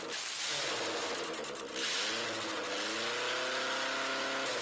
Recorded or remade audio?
recorded